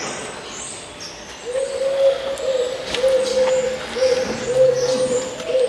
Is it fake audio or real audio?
real